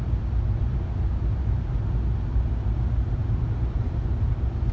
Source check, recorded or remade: recorded